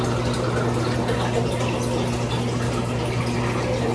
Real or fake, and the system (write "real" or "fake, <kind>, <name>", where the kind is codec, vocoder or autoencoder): real